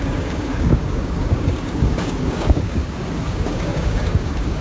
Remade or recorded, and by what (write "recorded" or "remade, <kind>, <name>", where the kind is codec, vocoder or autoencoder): remade, codec, DAC